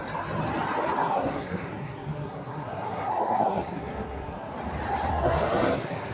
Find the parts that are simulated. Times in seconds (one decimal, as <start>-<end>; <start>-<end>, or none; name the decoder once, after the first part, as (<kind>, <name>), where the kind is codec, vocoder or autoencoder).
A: 1.0-4.5 (codec, SNAC); 5.1-6.1